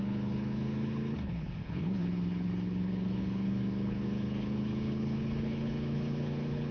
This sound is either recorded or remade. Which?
remade